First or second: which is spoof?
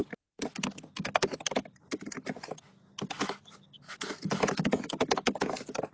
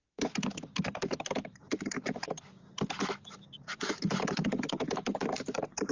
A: second